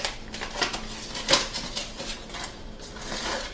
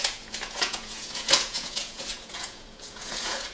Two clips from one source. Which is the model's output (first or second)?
second